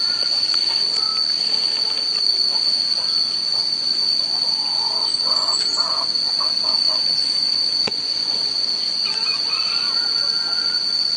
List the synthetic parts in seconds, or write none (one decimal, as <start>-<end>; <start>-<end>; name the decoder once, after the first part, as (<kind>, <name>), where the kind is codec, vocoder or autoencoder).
0.0-1.1 (vocoder, Vocos); 2.5-11.2